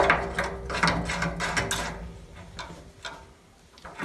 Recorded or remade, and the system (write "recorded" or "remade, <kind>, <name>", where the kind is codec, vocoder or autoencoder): recorded